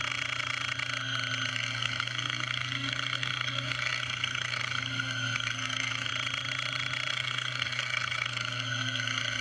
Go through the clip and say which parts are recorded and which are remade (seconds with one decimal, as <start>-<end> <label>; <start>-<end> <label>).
0.0-1.5 recorded; 1.5-6.1 remade; 6.1-7.1 recorded; 7.1-9.4 remade